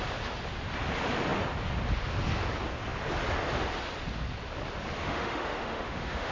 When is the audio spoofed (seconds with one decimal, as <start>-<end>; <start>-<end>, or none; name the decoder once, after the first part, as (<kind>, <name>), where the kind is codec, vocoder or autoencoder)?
5.0-6.3 (autoencoder, DAC-VAE)